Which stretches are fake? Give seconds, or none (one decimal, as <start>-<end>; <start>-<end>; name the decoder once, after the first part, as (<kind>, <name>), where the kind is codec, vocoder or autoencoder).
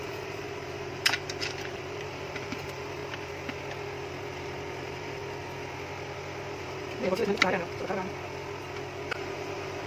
0.0-3.0 (vocoder, BigVGAN v2); 4.8-5.2; 6.6-7.2; 9.1-9.9